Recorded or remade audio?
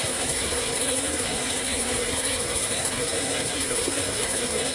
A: remade